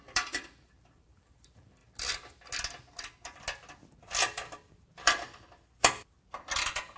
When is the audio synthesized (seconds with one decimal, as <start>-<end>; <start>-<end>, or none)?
0.0-1.8; 4.0-7.0